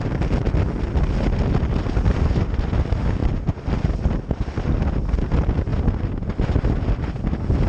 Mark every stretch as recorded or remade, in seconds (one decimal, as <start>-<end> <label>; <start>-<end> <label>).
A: 0.0-7.7 recorded